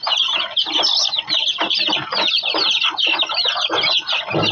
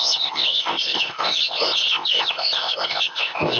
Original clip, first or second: first